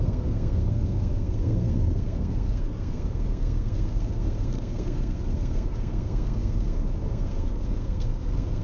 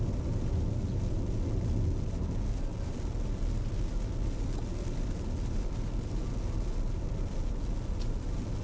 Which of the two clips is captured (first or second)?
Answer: second